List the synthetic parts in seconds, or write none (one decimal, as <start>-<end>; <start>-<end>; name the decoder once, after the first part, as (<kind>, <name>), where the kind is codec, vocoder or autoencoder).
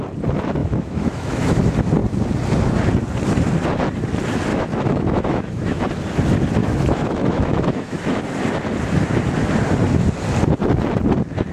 0.6-1.6 (autoencoder, DAC-VAE); 4.5-5.8; 6.6-8.2